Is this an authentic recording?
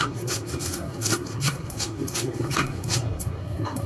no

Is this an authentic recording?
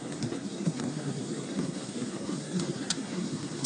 no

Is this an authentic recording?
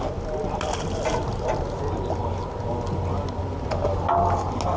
yes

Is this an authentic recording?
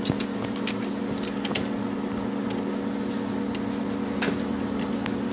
yes